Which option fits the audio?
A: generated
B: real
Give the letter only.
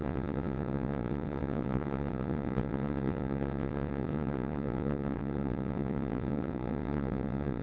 A